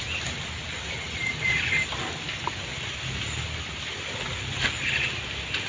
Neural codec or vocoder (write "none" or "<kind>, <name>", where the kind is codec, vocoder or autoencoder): none